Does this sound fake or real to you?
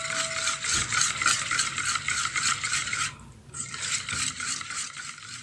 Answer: real